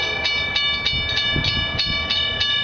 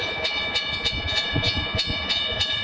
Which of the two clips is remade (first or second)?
second